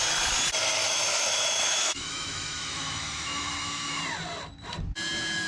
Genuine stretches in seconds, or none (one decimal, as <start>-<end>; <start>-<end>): 0.0-0.8; 4.0-5.5